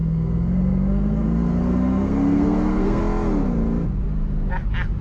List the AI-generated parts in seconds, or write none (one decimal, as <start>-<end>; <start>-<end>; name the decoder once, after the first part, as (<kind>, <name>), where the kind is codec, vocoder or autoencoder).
0.0-3.0 (codec, SNAC)

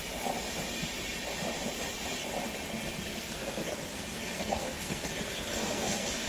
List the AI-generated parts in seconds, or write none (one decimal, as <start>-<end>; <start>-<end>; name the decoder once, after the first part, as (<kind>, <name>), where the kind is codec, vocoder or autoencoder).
3.1-6.3 (codec, SNAC)